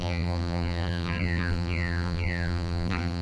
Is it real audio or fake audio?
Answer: fake